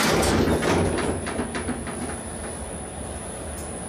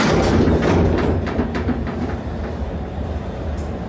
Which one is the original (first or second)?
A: first